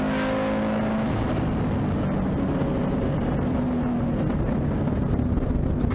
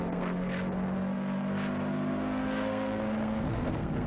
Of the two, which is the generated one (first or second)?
second